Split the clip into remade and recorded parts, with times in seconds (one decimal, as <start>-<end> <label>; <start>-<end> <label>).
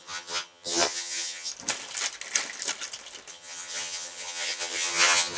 0.0-1.5 remade; 1.5-3.3 recorded; 3.3-5.4 remade